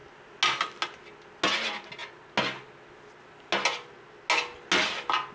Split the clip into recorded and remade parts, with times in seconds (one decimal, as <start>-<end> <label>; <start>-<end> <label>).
0.0-5.3 recorded